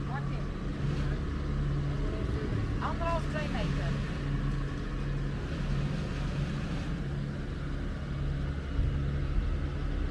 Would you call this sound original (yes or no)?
yes